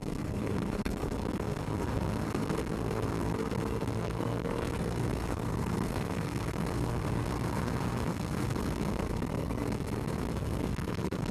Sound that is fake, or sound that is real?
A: fake